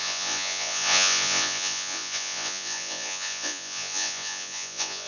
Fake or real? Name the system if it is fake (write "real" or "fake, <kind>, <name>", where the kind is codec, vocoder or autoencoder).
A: fake, vocoder, Vocos